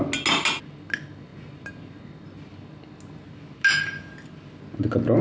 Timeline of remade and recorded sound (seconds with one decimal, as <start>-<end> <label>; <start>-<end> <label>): 0.0-5.2 recorded